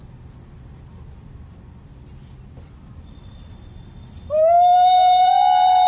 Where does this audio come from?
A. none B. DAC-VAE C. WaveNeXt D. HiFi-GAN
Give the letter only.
A